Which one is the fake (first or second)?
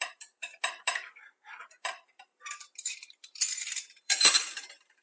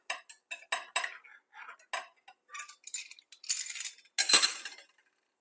first